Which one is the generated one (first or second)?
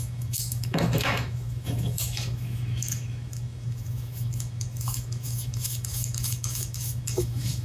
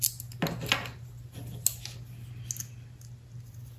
first